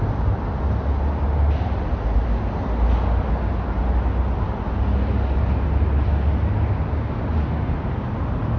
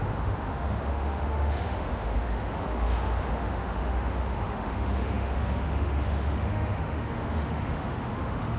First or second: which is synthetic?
second